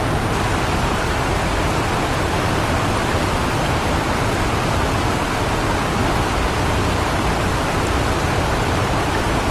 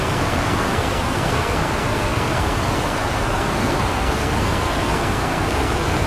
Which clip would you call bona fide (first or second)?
first